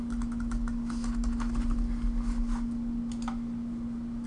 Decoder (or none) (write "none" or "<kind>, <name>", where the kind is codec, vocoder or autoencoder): none